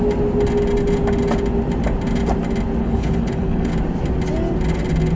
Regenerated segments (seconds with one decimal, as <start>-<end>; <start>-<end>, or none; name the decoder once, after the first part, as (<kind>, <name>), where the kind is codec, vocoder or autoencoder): 2.8-3.7 (codec, HILCodec)